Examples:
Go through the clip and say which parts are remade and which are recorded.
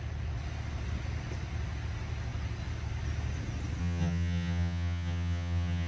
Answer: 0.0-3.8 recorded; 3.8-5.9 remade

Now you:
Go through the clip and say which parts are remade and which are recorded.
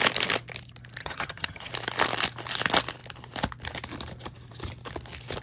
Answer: 0.0-1.0 recorded; 1.0-1.7 remade; 1.7-5.4 recorded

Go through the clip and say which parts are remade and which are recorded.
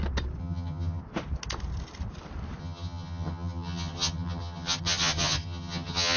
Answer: 0.0-0.4 recorded; 0.4-1.0 remade; 1.0-2.6 recorded; 2.6-6.2 remade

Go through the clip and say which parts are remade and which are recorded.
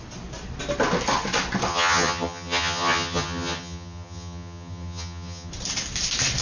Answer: 0.0-1.7 recorded; 1.7-5.5 remade; 5.5-6.4 recorded